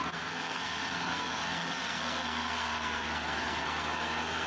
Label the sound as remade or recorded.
remade